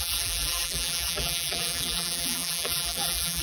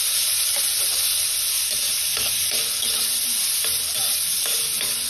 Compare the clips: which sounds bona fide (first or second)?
second